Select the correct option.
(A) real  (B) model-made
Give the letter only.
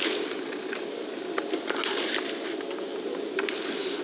A